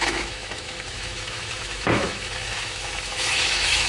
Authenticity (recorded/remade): remade